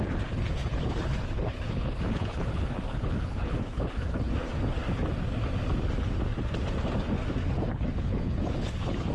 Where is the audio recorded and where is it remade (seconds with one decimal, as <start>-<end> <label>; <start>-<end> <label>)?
0.0-0.6 recorded; 0.6-4.3 remade; 4.3-7.4 recorded; 7.4-9.1 remade